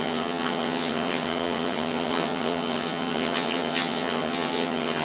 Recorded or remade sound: remade